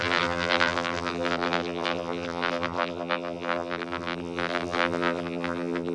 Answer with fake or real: fake